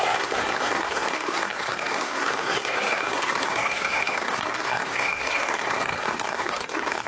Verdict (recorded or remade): remade